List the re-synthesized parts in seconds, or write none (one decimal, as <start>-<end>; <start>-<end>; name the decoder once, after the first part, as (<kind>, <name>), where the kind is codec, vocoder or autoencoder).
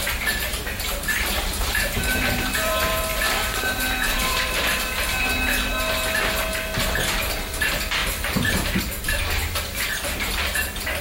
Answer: 0.5-4.7 (vocoder, BigVGAN v2); 8.0-8.8; 9.4-9.9